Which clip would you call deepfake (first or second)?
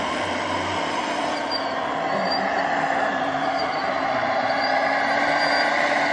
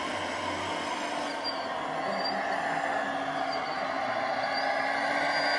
first